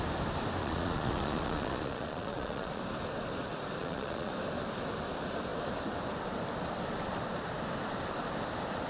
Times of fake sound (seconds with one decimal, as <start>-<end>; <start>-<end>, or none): 0.6-2.8; 3.8-4.3